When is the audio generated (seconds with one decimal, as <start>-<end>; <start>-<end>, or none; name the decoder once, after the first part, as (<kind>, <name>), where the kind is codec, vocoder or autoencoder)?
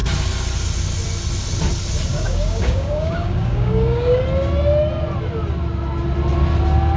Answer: 2.1-4.2 (codec, DAC)